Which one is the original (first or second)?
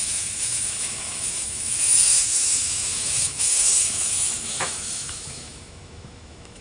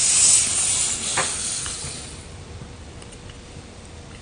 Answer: second